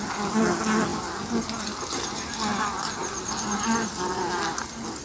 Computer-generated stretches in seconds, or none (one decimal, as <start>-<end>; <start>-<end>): none